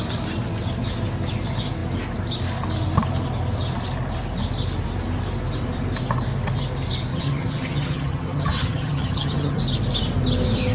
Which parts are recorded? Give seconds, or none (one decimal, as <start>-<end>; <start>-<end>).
0.0-7.1; 9.6-10.7